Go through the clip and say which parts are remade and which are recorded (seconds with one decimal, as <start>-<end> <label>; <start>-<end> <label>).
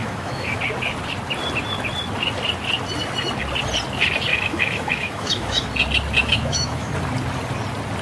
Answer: 0.0-0.6 remade; 0.6-4.3 recorded; 4.3-5.7 remade; 5.7-6.2 recorded; 6.2-6.9 remade; 6.9-8.0 recorded